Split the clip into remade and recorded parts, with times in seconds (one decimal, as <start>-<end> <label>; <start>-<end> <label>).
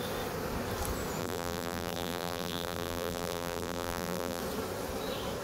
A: 0.0-1.2 recorded; 1.2-4.4 remade; 4.4-5.4 recorded